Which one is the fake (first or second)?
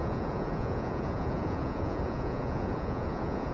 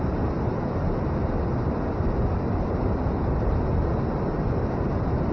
first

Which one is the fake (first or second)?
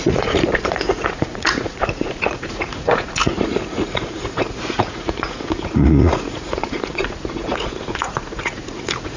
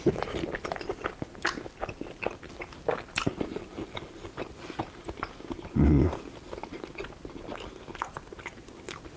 first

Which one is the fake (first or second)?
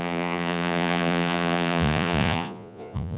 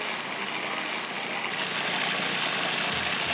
first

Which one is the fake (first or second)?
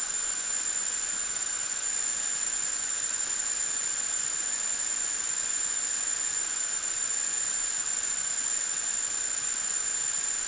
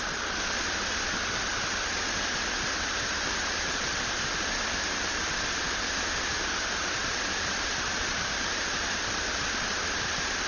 first